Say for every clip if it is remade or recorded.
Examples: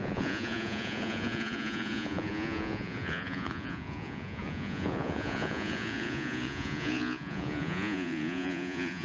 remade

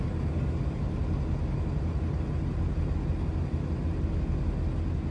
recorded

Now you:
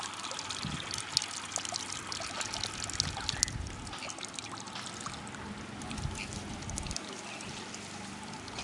recorded